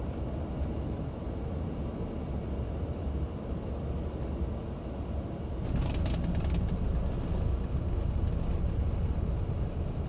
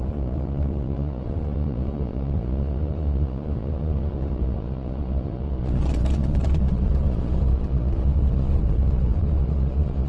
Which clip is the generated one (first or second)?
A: second